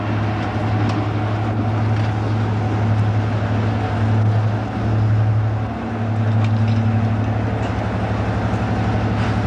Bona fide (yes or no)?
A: yes